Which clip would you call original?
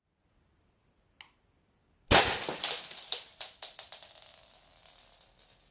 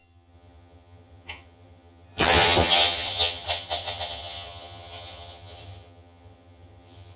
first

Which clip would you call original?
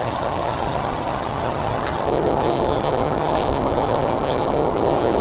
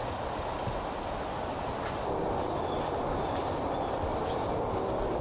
second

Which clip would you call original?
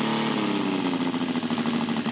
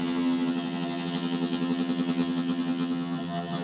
first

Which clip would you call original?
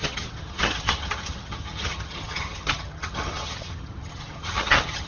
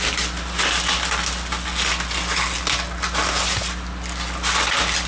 second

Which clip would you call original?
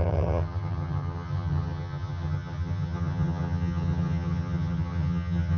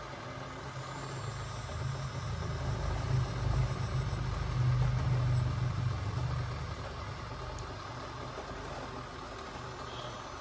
second